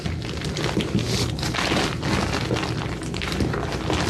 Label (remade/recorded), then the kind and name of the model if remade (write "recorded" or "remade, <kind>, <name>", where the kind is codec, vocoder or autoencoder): recorded